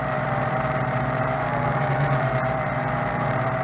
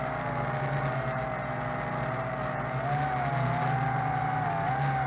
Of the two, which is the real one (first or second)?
second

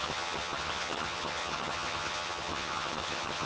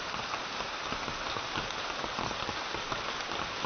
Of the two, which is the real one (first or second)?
second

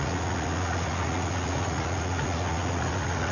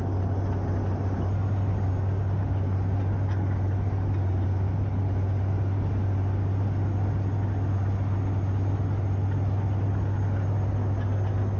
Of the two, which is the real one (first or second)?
second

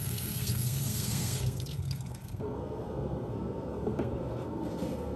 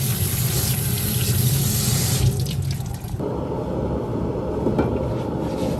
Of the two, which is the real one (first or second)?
second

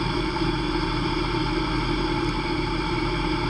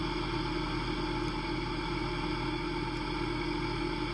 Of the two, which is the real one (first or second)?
second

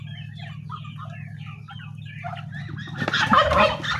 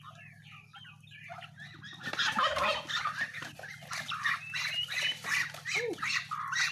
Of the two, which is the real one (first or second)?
first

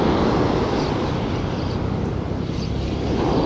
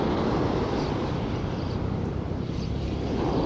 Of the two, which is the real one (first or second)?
first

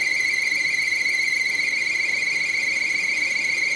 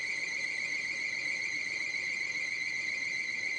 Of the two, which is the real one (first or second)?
first